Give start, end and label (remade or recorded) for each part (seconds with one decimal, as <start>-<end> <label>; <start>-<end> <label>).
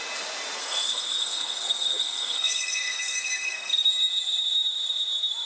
0.0-0.6 recorded; 0.6-3.9 remade; 3.9-5.5 recorded